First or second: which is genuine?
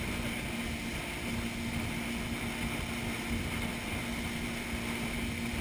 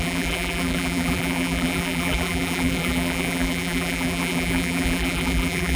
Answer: first